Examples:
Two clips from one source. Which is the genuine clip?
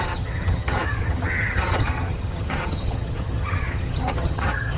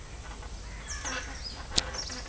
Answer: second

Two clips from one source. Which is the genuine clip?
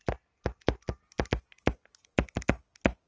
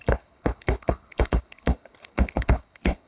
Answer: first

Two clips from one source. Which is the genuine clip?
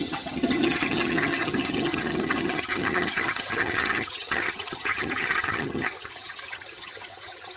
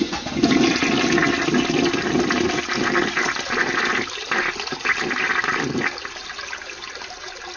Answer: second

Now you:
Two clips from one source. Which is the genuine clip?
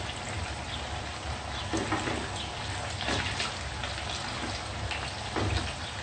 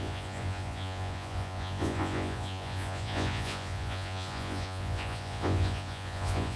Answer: first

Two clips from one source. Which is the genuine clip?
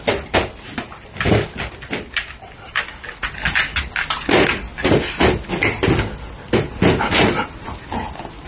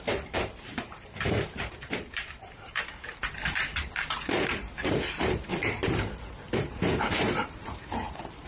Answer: first